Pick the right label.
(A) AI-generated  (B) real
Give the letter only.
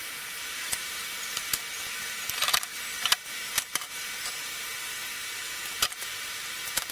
A